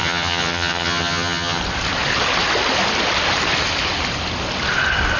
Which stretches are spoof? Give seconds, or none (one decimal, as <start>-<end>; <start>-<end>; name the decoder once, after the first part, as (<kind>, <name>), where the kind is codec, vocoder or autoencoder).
0.0-1.6 (vocoder, HiFi-GAN)